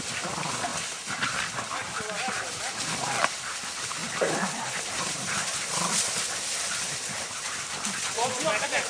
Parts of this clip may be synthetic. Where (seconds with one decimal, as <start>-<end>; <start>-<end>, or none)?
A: 0.0-0.7; 3.1-8.9